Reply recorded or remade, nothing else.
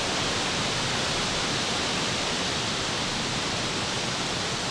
recorded